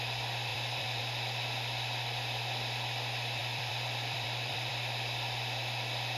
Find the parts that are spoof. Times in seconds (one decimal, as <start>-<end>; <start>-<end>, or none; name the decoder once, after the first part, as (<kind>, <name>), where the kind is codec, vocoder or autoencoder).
0.5-1.0 (vocoder, BigVGAN v2); 3.4-4.7